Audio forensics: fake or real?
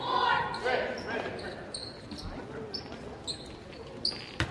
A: real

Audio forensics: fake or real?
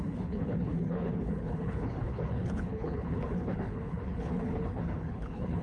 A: fake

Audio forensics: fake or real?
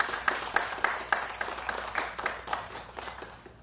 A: fake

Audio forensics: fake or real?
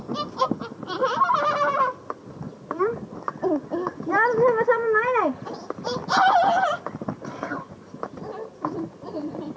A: real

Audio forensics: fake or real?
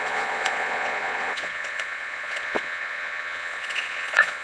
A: fake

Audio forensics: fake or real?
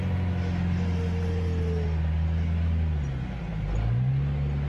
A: real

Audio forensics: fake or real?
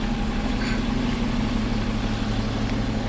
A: real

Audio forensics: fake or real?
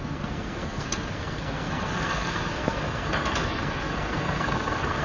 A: fake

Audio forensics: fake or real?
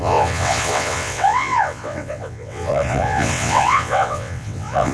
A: fake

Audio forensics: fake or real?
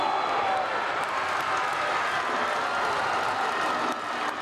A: real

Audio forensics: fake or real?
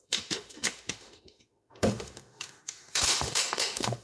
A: fake